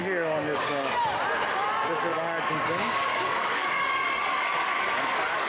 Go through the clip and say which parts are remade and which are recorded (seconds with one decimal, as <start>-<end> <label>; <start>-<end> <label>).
0.0-1.0 remade; 1.0-2.1 recorded; 2.1-5.5 remade